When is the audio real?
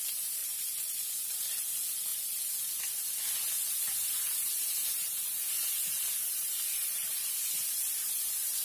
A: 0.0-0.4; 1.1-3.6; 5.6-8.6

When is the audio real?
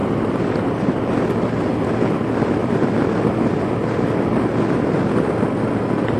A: 0.9-2.6; 5.0-6.2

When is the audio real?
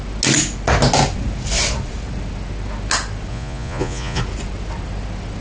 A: 0.0-3.3; 4.2-5.4